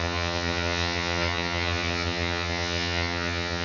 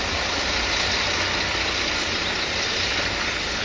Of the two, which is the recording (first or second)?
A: second